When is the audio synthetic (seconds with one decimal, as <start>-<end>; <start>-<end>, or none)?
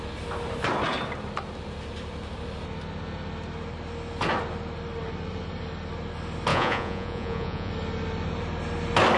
6.5-7.7